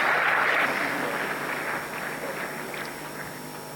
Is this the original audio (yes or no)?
yes